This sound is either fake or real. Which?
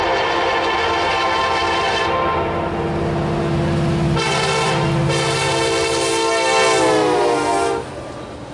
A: real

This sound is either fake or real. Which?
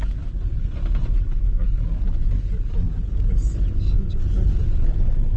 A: real